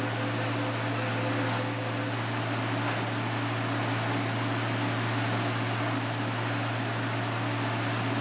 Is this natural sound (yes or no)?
yes